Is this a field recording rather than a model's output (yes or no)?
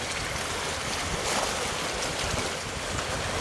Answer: yes